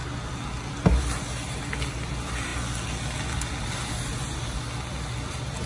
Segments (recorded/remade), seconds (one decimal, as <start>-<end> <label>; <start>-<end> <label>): 0.0-5.7 recorded